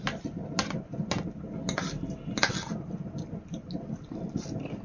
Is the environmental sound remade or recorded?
recorded